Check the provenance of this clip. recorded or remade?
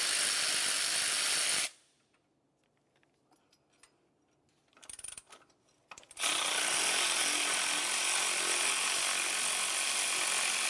recorded